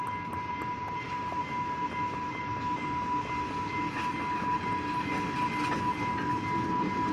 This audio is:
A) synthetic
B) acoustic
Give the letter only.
B